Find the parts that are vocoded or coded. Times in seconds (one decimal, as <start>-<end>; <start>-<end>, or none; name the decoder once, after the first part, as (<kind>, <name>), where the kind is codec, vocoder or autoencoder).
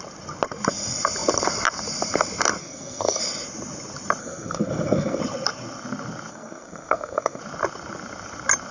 2.6-3.2 (codec, SNAC); 4.2-5.2; 6.3-7.4